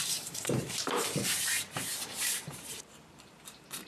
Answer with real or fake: fake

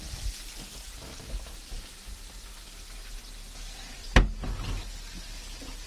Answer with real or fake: real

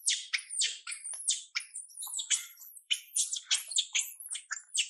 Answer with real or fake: fake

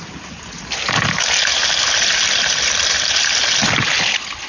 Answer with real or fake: real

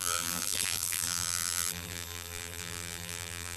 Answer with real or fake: fake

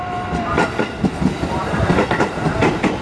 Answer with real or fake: real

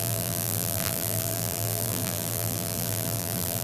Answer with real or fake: fake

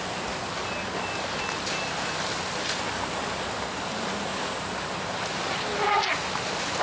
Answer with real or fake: real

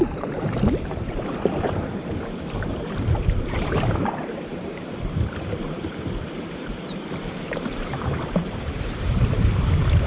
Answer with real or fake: fake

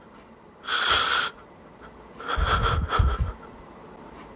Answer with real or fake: fake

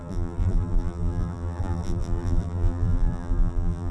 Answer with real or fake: fake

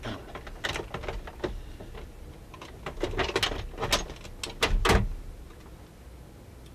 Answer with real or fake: real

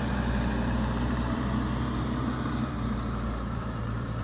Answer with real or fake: fake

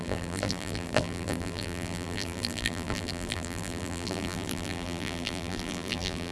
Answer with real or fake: fake